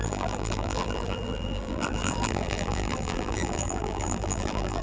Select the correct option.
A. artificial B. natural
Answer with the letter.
A